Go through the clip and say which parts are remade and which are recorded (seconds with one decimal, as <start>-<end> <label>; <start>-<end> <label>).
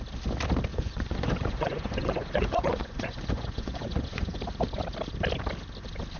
0.0-0.7 recorded; 0.7-4.4 remade; 4.4-6.2 recorded